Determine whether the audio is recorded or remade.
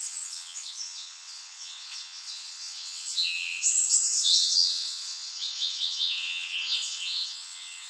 remade